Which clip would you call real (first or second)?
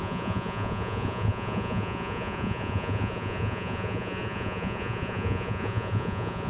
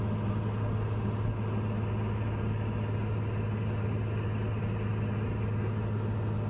second